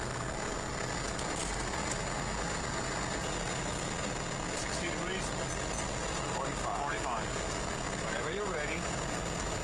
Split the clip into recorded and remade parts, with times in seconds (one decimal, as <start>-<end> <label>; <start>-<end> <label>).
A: 0.0-9.6 recorded